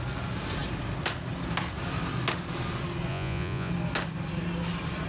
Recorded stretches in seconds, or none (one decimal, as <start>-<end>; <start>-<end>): 0.0-3.1; 3.7-5.1